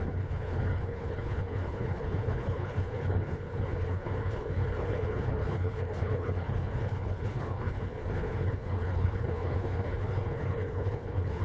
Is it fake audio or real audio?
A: fake